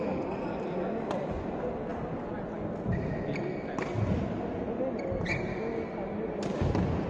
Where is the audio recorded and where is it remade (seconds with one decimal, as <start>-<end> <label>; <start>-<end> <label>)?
0.0-7.1 recorded